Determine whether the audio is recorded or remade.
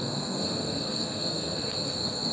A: remade